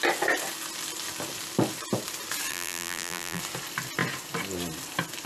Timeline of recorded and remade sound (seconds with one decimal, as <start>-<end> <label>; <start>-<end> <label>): 0.0-2.5 recorded; 2.5-3.4 remade; 3.4-5.3 recorded

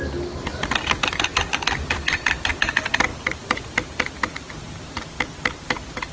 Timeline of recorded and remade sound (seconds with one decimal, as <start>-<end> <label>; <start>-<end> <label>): 0.0-3.1 recorded; 3.1-4.3 remade; 4.3-6.1 recorded

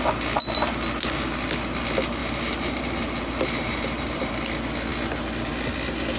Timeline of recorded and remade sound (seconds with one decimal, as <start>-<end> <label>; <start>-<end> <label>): 0.0-2.2 recorded; 2.2-4.3 remade; 4.3-6.2 recorded

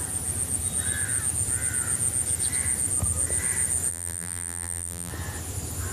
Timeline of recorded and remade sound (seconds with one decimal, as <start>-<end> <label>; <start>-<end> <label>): 0.0-3.9 recorded; 3.9-5.1 remade; 5.1-5.9 recorded